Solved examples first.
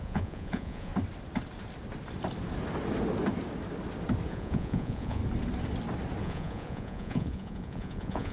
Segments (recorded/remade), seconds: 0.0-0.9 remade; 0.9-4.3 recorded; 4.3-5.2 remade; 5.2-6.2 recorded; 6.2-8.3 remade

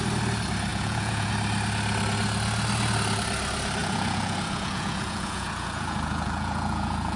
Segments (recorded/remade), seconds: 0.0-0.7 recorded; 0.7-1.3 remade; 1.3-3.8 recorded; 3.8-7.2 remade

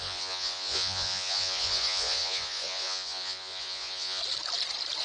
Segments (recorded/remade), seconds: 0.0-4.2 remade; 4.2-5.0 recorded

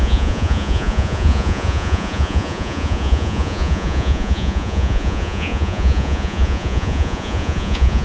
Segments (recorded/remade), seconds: 0.0-8.0 remade

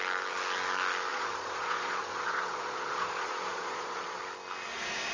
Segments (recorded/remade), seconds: 0.0-1.1 recorded; 1.1-4.2 remade; 4.2-5.1 recorded

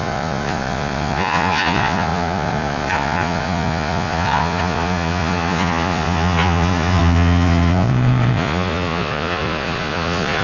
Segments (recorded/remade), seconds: 0.0-10.4 remade

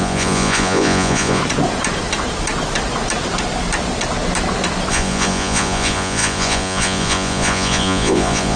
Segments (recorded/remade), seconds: 0.0-1.4 remade; 1.4-4.9 recorded; 4.9-8.6 remade